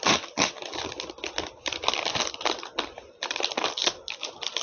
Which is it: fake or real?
real